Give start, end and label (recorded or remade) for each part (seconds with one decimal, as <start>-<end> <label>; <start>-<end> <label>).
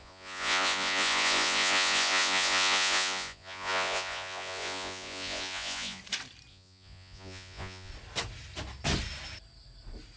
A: 0.0-6.0 remade; 6.0-6.5 recorded; 6.5-7.9 remade; 7.9-10.2 recorded